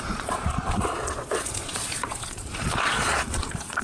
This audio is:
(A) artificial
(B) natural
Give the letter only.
A